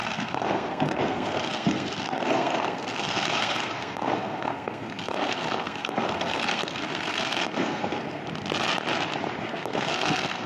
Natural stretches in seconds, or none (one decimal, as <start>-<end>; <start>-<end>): 8.2-9.4